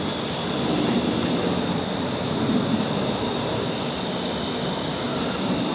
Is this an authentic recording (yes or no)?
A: yes